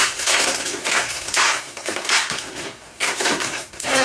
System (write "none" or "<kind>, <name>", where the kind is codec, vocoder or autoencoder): codec, SNAC